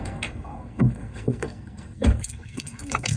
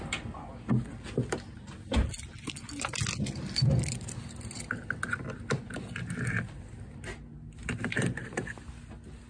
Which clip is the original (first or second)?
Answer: second